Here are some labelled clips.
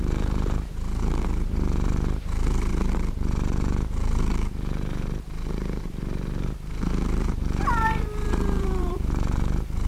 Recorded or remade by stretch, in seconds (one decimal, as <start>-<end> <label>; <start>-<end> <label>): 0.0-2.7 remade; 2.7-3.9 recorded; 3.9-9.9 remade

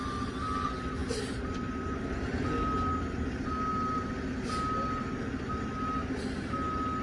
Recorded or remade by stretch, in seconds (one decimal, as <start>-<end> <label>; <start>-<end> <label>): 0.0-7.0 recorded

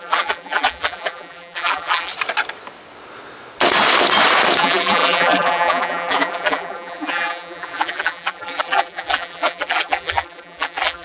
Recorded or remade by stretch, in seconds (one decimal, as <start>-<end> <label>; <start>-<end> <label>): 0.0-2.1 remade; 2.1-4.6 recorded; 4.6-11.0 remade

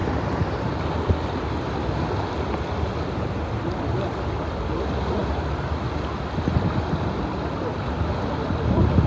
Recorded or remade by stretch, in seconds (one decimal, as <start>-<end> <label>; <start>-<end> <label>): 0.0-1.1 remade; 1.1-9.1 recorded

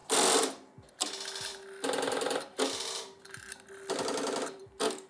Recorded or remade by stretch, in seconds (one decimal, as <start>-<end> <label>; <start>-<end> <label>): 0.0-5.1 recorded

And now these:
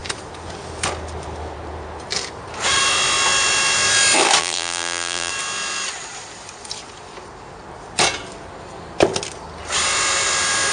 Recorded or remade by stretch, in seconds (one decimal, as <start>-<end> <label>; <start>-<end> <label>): 0.0-4.4 recorded; 4.4-5.3 remade; 5.3-10.7 recorded